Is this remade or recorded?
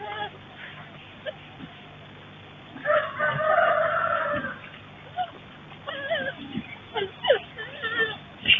recorded